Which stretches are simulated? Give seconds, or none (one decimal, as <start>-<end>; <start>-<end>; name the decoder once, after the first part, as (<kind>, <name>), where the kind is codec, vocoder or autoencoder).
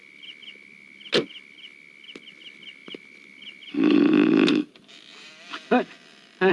2.8-4.1 (vocoder, BigVGAN v2); 4.6-6.5